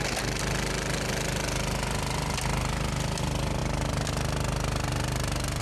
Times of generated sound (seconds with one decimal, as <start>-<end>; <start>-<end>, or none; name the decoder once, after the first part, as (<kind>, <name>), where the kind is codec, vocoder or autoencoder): none